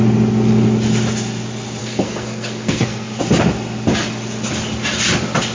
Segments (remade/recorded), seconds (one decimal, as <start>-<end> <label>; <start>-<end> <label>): 0.0-1.8 recorded; 1.8-3.2 remade; 3.2-5.5 recorded